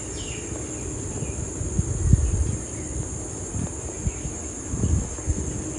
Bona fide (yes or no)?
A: yes